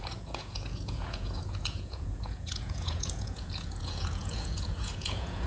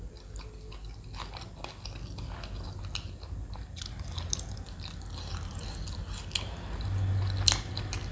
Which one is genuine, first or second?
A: second